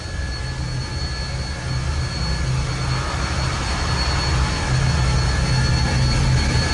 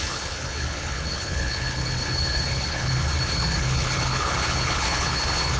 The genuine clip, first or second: first